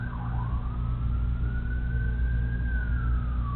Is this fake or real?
real